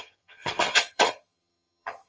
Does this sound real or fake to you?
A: fake